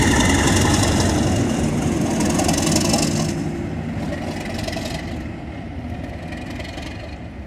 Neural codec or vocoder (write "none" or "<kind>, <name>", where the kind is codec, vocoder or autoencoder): none